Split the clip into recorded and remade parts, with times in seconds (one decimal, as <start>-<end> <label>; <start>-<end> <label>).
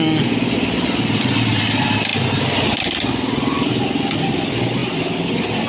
0.0-5.7 recorded